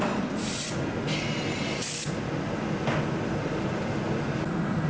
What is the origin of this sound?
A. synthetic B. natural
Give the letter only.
B